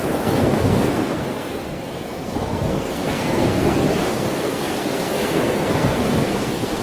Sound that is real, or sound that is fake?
fake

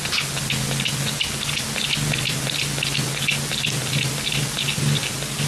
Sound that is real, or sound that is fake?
real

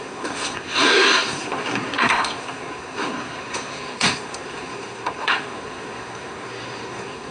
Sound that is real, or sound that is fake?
fake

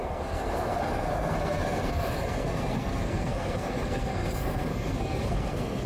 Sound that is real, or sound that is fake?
fake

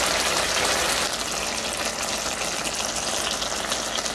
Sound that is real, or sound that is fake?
real